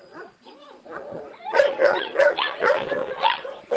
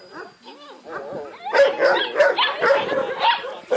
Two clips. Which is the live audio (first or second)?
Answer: second